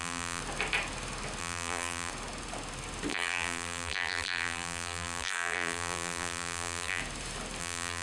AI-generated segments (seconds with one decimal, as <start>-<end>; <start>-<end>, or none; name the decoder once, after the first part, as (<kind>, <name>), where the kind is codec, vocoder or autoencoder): 0.0-0.4 (vocoder, BigVGAN v2); 1.4-2.1; 3.1-7.0; 7.6-8.0